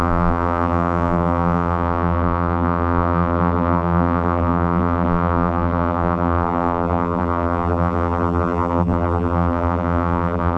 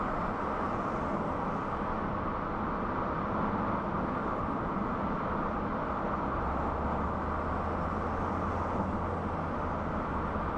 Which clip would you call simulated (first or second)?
first